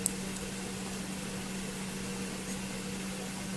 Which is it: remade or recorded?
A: recorded